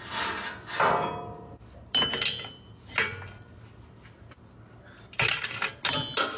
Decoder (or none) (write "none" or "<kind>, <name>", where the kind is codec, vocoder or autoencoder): none